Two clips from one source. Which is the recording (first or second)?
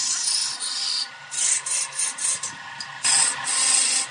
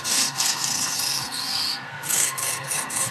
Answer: first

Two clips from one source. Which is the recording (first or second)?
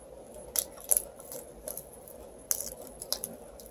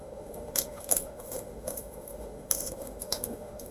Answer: first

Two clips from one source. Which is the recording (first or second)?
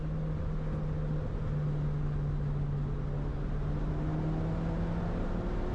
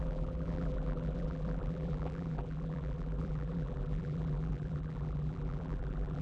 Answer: first